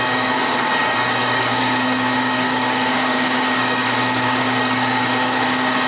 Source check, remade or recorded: remade